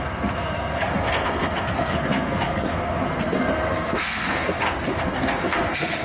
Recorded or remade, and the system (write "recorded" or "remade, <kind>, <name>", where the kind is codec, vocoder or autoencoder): remade, codec, SNAC